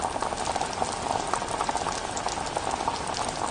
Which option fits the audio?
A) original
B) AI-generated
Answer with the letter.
A